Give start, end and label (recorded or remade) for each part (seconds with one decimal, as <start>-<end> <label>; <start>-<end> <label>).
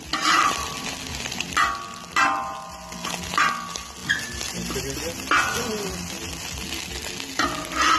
0.0-4.0 recorded; 4.0-4.8 remade; 4.8-8.0 recorded